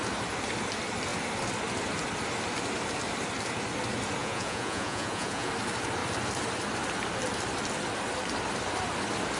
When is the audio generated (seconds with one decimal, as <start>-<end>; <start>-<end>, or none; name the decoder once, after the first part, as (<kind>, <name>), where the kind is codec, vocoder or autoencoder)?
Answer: 4.2-5.5 (vocoder, Vocos)